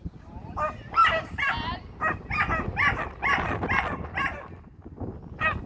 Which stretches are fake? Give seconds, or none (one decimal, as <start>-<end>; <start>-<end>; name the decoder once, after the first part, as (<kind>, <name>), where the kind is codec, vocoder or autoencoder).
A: none